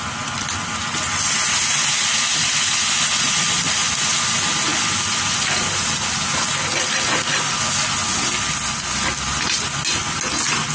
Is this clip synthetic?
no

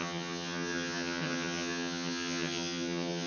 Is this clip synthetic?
yes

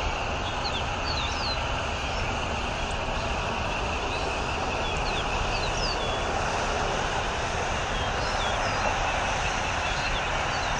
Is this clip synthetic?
no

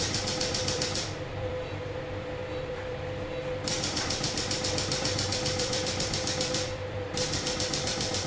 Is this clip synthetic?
yes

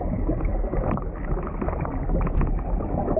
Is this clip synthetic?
no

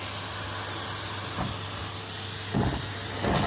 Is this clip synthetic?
no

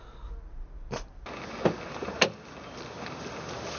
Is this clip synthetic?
no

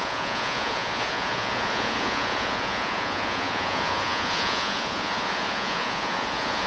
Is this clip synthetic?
yes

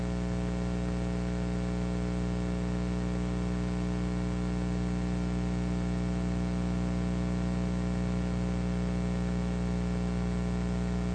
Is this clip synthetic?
no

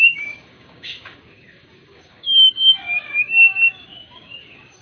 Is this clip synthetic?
yes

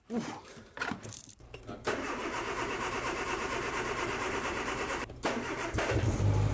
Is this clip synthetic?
yes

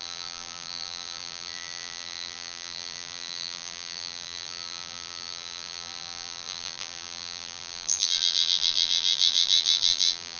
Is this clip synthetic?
yes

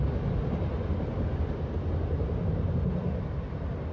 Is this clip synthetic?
no